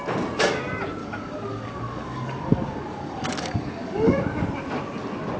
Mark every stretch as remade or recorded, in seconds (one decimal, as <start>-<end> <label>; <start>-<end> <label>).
0.0-1.0 recorded; 1.0-4.2 remade; 4.2-5.4 recorded